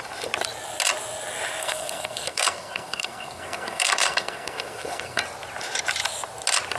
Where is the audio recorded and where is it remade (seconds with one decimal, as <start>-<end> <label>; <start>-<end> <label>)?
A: 0.0-1.6 recorded; 1.6-5.2 remade; 5.2-6.8 recorded